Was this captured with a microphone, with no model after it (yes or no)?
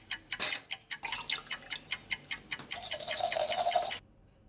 yes